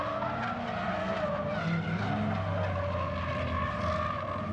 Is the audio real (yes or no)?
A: yes